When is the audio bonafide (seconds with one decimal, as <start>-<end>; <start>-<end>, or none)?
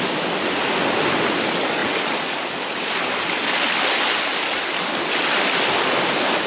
0.0-1.8; 5.7-6.5